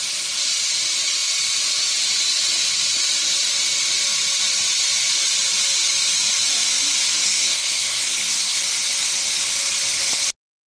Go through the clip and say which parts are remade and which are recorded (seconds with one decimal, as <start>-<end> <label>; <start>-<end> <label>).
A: 0.0-7.1 recorded; 7.1-8.6 remade; 8.6-10.7 recorded